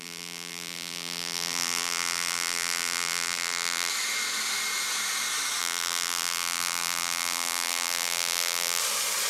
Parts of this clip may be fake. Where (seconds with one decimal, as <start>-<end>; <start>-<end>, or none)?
0.0-3.9; 5.6-8.8